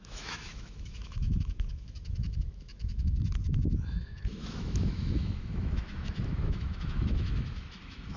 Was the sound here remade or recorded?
remade